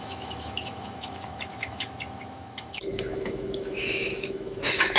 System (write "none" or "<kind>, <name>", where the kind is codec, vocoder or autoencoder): autoencoder, DAC-VAE